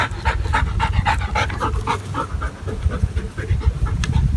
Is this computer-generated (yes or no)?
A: no